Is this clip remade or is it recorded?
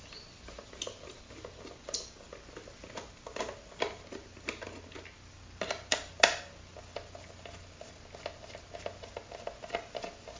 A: recorded